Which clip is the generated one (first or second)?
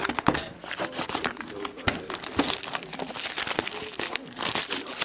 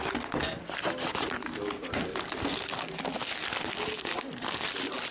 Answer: first